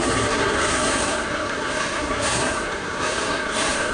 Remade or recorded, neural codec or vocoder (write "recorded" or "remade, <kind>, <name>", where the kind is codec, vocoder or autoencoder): remade, codec, SNAC